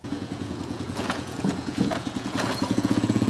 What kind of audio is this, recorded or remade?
remade